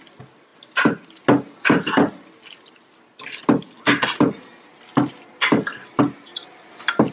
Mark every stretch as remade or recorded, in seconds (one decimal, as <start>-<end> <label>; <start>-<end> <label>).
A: 0.0-7.1 recorded